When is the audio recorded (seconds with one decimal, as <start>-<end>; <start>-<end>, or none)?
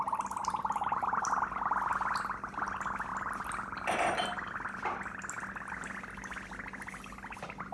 0.0-0.4; 1.2-7.7